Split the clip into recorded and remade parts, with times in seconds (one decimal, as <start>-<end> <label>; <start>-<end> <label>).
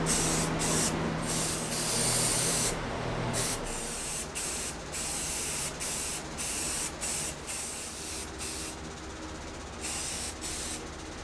0.0-2.3 recorded; 2.3-6.7 remade; 6.7-11.2 recorded